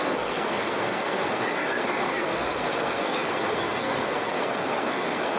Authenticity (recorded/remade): remade